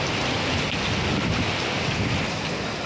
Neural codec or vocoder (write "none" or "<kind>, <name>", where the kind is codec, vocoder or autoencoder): none